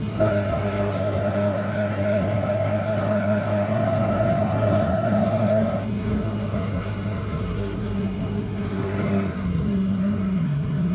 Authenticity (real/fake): fake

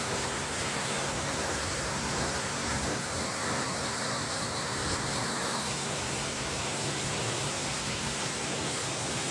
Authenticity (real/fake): fake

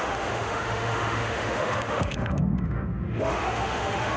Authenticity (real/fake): fake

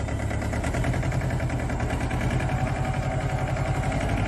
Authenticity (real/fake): real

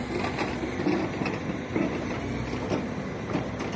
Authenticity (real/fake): real